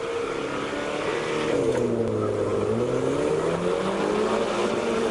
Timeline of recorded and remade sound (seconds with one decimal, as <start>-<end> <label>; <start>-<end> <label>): 0.0-5.1 recorded